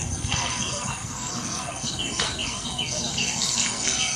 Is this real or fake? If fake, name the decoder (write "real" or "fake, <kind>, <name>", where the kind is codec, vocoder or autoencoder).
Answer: fake, codec, SNAC